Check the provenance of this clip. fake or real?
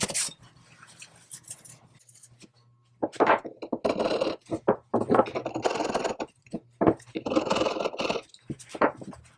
real